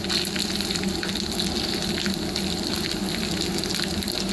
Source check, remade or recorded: recorded